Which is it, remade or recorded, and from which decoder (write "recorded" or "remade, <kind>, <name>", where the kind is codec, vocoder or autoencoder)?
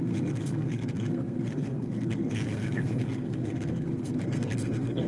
remade, codec, SNAC